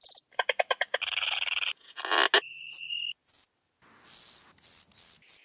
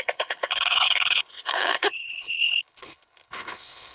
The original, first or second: first